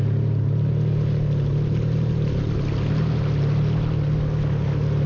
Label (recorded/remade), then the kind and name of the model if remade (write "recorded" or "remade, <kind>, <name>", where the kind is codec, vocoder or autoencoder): recorded